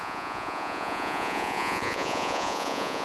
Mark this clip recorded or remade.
remade